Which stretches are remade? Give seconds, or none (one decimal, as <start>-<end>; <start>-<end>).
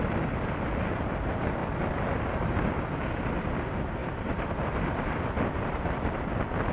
4.0-4.7